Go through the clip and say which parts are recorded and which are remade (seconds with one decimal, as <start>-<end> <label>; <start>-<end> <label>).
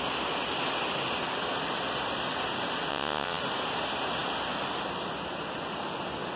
0.0-2.9 recorded; 2.9-3.4 remade; 3.4-6.4 recorded